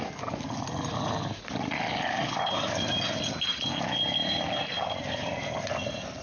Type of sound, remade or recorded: recorded